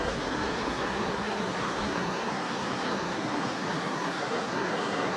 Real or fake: fake